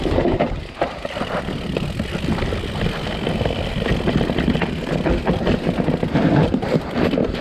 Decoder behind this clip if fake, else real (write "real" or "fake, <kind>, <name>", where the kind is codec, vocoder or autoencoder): real